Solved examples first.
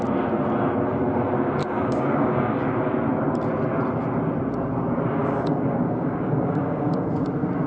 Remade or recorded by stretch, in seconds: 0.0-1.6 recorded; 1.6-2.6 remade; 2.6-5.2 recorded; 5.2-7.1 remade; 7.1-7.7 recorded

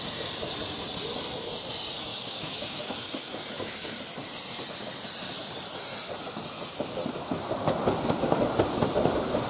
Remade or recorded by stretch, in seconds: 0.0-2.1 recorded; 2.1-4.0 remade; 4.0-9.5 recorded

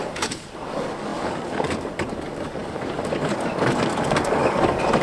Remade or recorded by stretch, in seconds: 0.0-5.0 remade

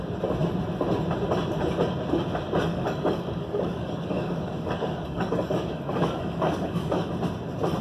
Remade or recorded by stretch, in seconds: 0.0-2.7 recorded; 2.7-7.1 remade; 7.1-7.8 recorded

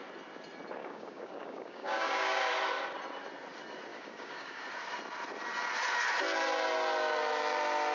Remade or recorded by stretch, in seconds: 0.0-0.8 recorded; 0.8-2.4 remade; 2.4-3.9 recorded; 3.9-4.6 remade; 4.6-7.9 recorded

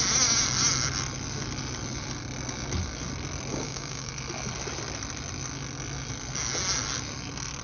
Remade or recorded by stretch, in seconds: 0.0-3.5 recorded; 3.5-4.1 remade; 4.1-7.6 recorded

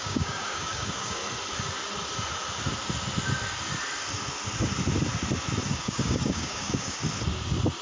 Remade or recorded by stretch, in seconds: 0.0-1.2 remade; 1.2-5.7 recorded; 5.7-7.0 remade; 7.0-7.8 recorded

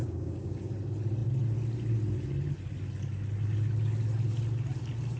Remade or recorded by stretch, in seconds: 0.0-0.7 remade; 0.7-5.2 recorded